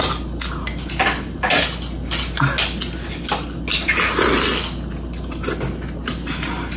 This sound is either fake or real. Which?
real